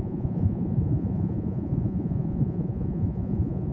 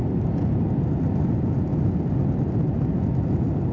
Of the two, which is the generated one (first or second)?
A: first